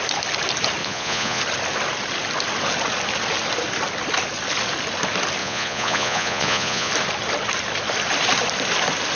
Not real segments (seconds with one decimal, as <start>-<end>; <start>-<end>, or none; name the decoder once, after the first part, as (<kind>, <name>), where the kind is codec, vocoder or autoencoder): 0.8-1.4 (vocoder, Vocos); 5.4-6.9